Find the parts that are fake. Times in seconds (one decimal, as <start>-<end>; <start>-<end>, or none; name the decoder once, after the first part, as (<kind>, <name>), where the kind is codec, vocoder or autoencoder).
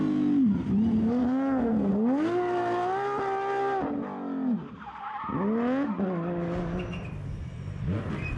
1.2-1.9 (codec, SNAC)